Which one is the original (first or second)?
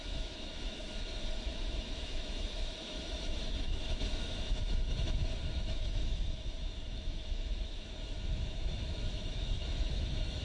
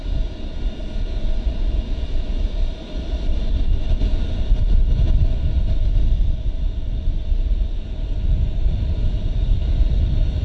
second